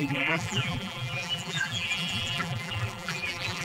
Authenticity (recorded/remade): remade